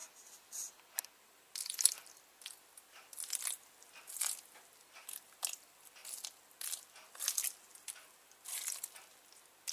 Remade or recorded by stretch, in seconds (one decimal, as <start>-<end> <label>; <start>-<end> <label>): 0.0-9.7 recorded